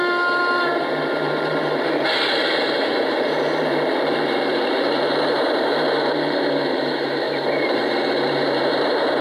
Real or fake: fake